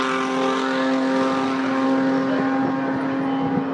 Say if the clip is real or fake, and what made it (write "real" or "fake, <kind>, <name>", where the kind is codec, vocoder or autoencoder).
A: real